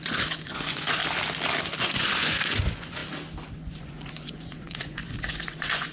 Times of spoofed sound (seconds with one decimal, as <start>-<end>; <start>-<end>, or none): 0.0-1.0; 1.8-3.0; 3.5-5.9